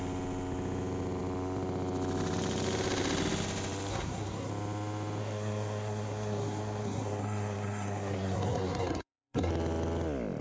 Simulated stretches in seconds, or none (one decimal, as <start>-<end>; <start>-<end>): 3.9-4.5; 5.2-9.5